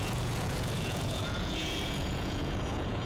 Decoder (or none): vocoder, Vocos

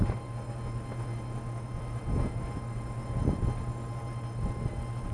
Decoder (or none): none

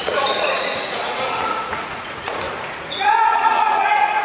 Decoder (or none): vocoder, Vocos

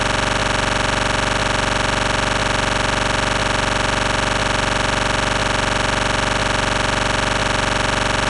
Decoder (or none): none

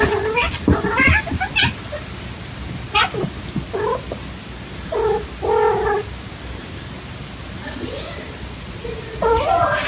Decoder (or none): none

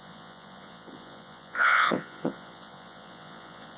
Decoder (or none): vocoder, Vocos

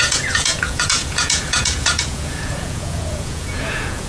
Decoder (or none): vocoder, Vocos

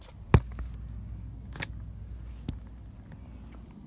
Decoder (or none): none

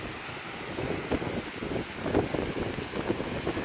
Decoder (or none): none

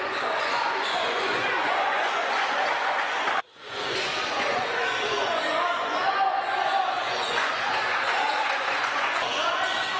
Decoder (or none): vocoder, Vocos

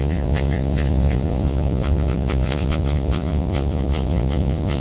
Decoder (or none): vocoder, Vocos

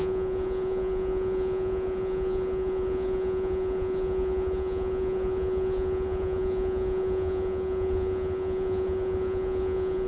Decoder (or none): vocoder, Vocos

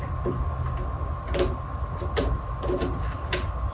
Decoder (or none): none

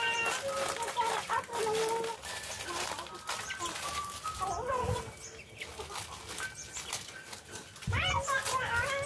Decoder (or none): none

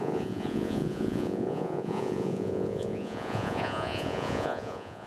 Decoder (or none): vocoder, Vocos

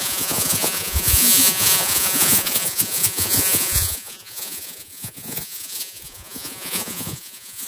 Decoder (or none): vocoder, Vocos